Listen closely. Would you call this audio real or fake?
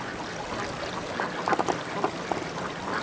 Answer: real